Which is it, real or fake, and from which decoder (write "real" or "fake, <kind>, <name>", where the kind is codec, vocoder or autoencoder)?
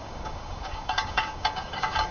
fake, codec, DAC